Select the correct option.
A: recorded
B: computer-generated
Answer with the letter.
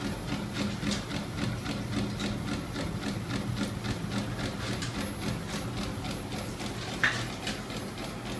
A